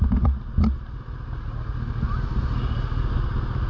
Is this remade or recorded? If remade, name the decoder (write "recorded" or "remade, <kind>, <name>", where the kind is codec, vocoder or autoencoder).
recorded